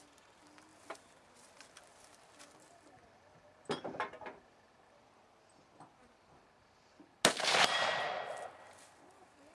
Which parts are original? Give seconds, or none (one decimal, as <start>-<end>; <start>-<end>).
0.0-9.5